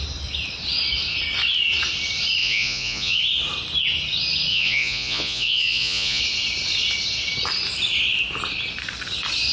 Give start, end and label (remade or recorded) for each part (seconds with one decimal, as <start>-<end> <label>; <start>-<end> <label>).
0.0-2.4 recorded; 2.4-3.2 remade; 3.2-4.5 recorded; 4.5-6.2 remade; 6.2-9.5 recorded